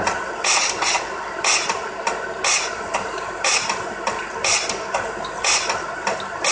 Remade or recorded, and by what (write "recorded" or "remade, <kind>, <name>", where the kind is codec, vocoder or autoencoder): recorded